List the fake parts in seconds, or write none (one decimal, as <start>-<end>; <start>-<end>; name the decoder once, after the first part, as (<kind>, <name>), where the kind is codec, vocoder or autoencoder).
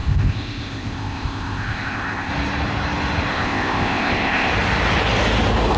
0.0-2.3 (codec, ZipCodec); 3.3-4.5